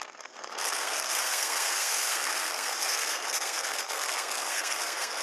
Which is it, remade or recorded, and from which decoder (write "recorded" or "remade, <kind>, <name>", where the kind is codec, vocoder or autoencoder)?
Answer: remade, codec, SNAC